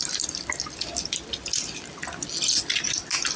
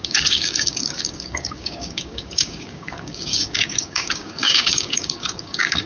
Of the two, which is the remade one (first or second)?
second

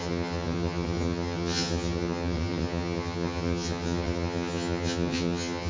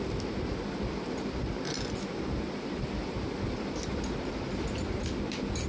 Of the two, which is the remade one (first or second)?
first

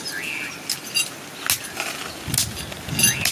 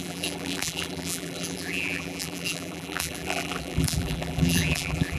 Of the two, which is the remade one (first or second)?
second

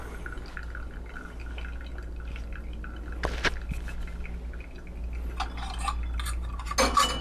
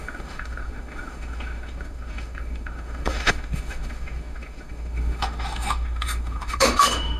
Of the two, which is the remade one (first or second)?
second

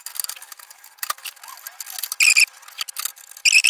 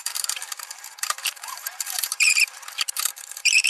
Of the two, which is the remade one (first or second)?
second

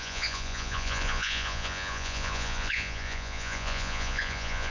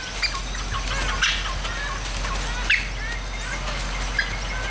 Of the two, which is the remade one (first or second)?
first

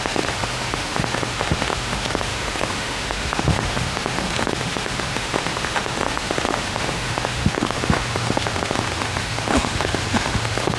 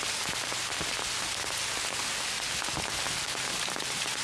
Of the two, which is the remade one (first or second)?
first